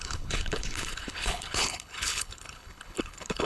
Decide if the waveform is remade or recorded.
remade